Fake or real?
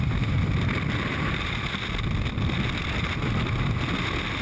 fake